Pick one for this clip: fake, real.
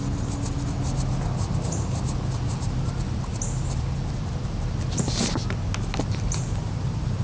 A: real